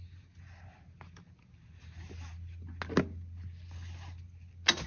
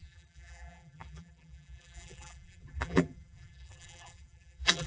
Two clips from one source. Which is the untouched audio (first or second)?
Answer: first